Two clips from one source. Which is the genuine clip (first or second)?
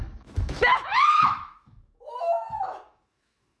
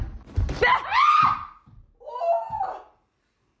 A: second